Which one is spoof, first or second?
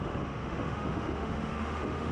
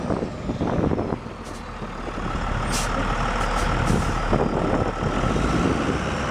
first